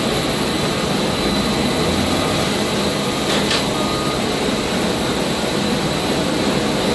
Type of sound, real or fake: real